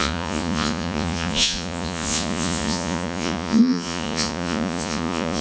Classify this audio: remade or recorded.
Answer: remade